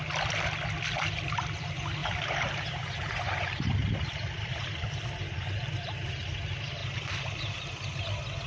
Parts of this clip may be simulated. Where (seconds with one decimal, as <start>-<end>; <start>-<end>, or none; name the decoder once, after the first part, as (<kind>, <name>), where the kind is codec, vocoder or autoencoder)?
2.0-5.7 (vocoder, BigVGAN v2); 6.8-7.6